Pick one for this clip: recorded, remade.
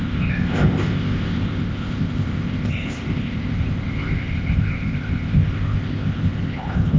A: remade